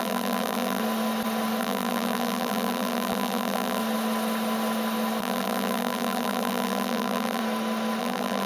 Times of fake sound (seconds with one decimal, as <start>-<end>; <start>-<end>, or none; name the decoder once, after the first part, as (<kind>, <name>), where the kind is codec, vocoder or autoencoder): 0.0-0.8 (vocoder, BigVGAN v2); 1.6-3.8; 5.2-7.4; 8.0-8.5

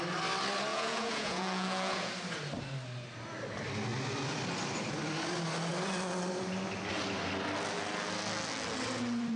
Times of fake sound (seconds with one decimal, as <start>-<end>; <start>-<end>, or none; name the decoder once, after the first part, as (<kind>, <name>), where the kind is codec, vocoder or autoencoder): 0.7-2.1 (vocoder, Vocos)